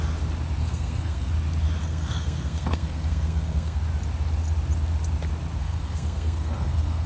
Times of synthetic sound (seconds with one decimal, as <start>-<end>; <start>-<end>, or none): 0.6-1.3; 1.8-3.8; 5.6-7.1